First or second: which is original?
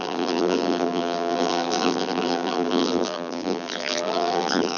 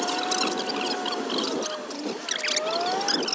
second